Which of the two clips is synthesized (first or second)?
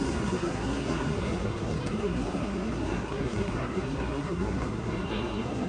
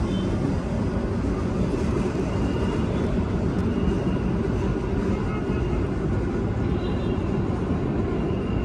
first